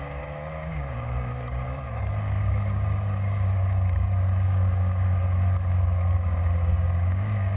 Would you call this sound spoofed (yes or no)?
yes